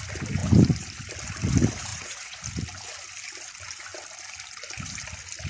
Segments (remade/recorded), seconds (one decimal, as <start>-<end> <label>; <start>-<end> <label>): 0.0-1.9 recorded; 1.9-2.4 remade; 2.4-5.5 recorded